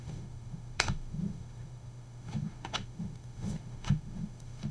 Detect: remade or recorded remade